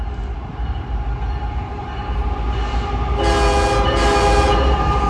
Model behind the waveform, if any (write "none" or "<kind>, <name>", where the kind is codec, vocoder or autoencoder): none